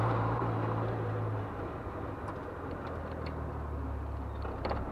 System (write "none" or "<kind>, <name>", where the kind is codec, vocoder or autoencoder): none